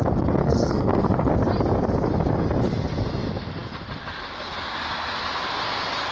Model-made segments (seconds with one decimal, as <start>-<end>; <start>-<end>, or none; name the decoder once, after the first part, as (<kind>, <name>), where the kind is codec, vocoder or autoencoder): 0.4-1.3 (codec, SNAC)